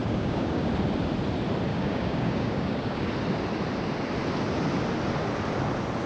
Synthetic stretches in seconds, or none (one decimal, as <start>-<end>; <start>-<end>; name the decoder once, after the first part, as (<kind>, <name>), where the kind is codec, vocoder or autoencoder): 0.0-0.7 (codec, DAC); 1.7-3.1